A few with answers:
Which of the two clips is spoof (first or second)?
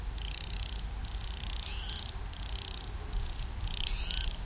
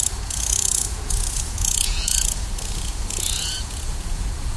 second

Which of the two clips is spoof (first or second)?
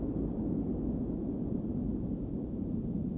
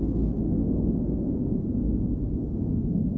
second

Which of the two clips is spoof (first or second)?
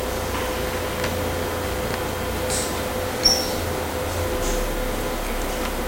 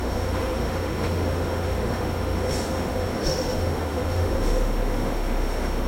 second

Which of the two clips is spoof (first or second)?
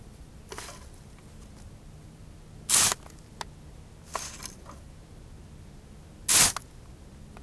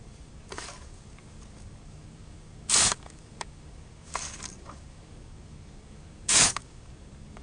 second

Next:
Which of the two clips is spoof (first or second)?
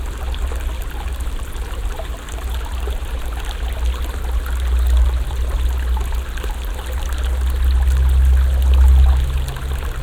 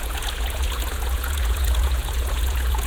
second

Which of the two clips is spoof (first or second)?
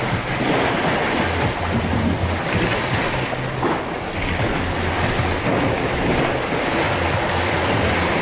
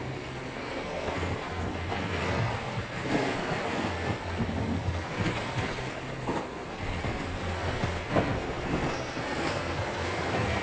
second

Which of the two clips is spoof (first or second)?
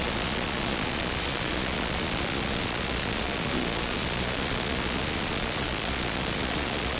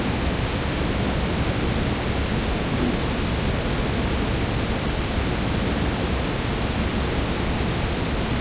first